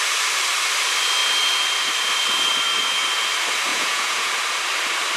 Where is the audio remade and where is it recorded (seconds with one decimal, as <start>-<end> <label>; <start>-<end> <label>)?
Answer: 0.0-3.7 recorded; 3.7-4.3 remade; 4.3-5.2 recorded